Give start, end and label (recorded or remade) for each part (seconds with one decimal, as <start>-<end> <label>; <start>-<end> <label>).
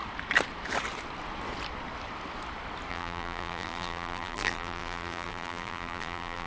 0.0-2.9 recorded; 2.9-6.5 remade